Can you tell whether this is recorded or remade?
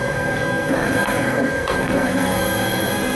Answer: remade